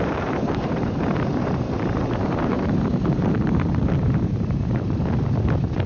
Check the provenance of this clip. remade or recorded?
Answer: remade